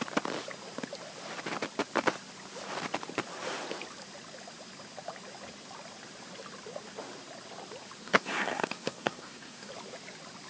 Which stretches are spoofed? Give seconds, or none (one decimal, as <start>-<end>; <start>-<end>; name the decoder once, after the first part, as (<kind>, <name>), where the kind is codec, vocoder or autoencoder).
8.0-9.7 (codec, SNAC)